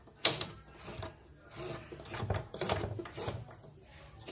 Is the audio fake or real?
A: real